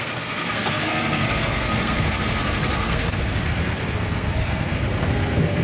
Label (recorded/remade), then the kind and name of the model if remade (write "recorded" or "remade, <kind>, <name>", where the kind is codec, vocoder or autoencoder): remade, codec, SNAC